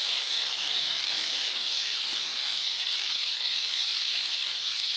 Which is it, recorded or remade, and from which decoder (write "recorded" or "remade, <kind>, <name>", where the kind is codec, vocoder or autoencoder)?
remade, codec, DAC